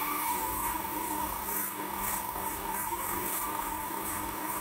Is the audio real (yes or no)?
no